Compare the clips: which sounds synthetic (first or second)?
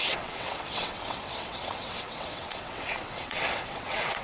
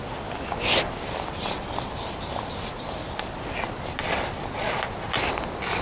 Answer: first